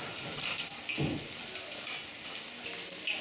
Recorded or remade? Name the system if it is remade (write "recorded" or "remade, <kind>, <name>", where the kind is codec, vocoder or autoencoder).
recorded